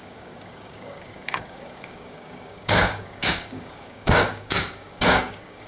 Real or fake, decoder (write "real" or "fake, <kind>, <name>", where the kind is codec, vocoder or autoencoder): fake, codec, DAC